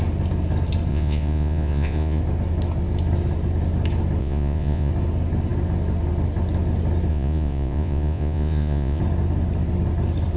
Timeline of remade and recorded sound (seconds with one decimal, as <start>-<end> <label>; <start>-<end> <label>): 0.0-0.9 recorded; 0.9-2.2 remade; 2.2-4.2 recorded; 4.2-4.9 remade; 4.9-7.1 recorded; 7.1-9.0 remade; 9.0-10.4 recorded